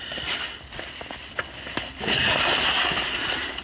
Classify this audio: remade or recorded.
recorded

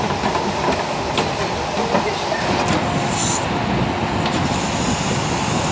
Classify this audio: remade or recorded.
recorded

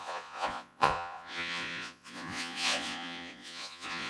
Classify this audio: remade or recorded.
remade